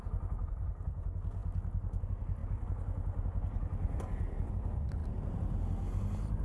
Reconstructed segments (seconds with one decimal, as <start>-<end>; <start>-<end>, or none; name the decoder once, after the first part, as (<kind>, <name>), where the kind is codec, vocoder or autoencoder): none